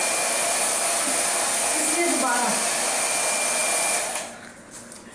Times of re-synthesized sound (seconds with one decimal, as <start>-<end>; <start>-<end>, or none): none